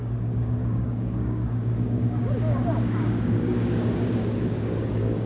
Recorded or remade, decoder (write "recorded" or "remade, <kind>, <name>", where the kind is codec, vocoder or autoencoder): remade, codec, DAC